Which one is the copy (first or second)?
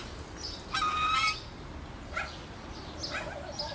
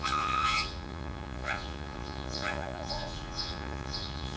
second